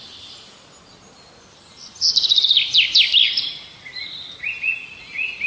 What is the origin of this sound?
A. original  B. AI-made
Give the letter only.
A